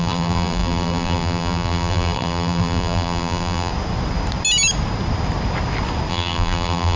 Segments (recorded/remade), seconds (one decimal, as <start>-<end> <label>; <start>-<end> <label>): 0.0-3.7 remade; 3.7-6.1 recorded; 6.1-7.0 remade